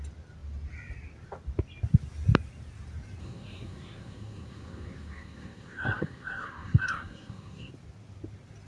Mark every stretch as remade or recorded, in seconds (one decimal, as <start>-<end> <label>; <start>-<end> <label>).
0.0-3.2 recorded; 3.2-7.7 remade; 7.7-8.7 recorded